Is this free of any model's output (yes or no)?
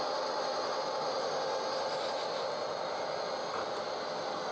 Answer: yes